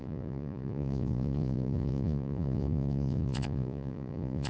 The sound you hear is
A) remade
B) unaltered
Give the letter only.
A